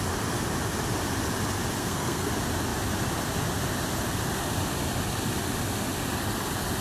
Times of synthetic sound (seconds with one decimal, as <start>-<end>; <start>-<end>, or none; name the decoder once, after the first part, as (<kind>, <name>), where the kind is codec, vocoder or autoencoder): 1.8-2.3 (codec, SNAC)

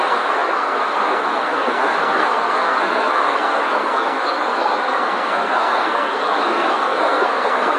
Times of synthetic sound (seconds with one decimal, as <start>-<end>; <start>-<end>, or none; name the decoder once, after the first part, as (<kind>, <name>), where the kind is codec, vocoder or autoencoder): 0.0-7.8 (codec, SNAC)

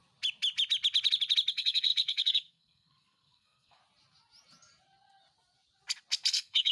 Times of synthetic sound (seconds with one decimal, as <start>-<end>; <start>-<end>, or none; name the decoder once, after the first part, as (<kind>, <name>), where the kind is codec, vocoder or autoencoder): 1.5-3.8 (codec, SNAC); 6.3-6.7

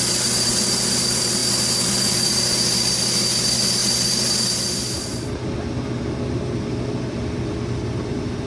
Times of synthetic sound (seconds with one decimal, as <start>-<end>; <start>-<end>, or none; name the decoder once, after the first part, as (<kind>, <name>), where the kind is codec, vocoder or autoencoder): none

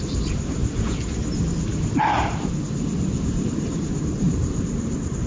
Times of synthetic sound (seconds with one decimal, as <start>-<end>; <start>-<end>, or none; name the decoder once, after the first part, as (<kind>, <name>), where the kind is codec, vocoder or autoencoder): 0.0-0.6 (vocoder, BigVGAN v2); 2.1-5.3

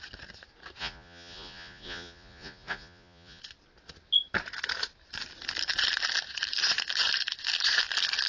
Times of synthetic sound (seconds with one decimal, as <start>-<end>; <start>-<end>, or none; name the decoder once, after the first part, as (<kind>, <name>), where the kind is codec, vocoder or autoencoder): 0.8-3.4 (vocoder, Vocos)